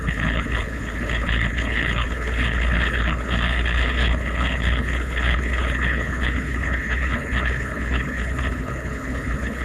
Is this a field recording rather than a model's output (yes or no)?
no